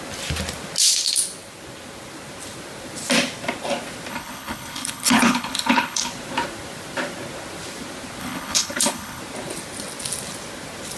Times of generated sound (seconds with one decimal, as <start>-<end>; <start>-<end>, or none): 4.1-6.1; 8.2-9.2